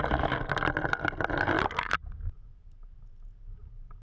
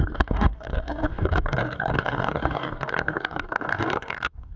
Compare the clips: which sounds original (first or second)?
first